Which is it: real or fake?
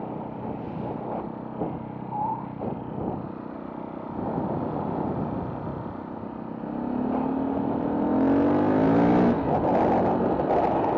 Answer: real